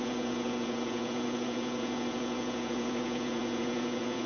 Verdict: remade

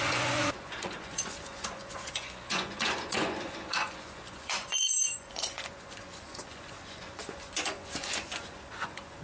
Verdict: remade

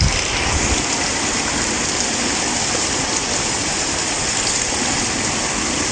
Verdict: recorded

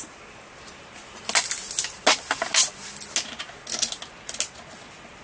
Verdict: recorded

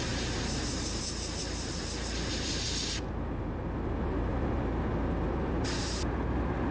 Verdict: recorded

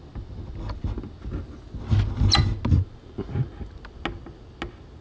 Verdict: recorded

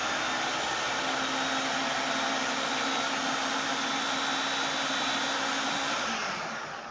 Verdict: recorded